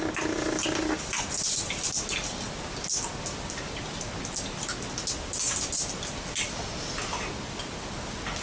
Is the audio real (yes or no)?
yes